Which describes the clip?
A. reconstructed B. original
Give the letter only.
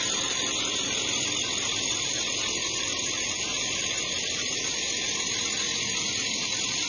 B